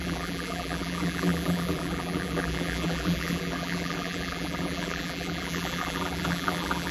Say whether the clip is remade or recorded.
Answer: remade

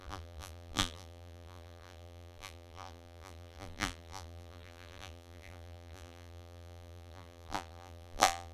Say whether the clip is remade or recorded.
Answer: remade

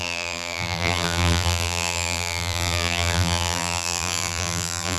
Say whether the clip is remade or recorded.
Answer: remade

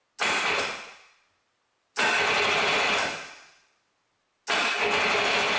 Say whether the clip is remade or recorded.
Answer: recorded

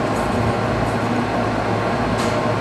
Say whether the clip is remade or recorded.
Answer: recorded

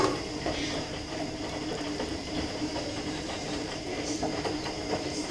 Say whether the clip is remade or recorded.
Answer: remade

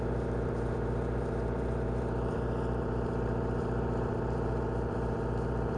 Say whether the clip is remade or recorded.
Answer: remade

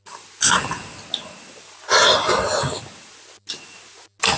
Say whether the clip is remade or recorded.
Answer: recorded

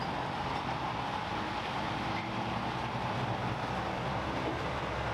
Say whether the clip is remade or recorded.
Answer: remade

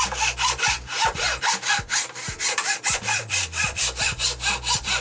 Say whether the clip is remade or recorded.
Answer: remade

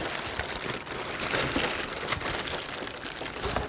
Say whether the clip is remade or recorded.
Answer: recorded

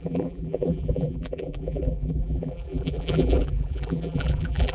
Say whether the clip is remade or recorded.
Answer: remade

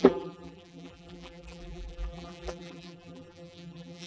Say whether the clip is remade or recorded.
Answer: remade